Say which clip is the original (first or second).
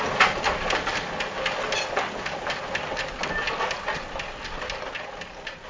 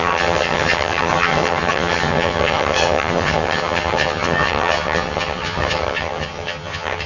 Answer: first